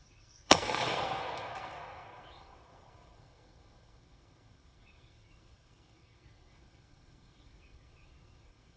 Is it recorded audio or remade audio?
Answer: remade